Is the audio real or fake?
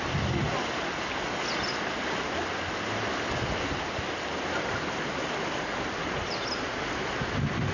real